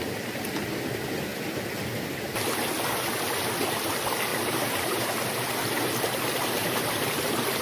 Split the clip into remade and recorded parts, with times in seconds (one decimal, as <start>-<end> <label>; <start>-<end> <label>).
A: 0.0-4.3 recorded; 4.3-5.1 remade; 5.1-6.6 recorded; 6.6-7.1 remade; 7.1-7.6 recorded